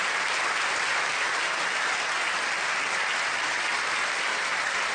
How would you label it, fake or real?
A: real